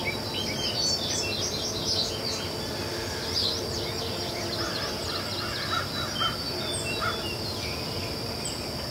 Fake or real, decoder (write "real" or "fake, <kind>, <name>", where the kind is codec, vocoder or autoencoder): real